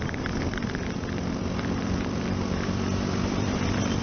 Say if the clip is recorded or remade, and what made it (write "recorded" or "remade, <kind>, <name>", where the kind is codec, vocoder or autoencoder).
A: remade, vocoder, BigVGAN v2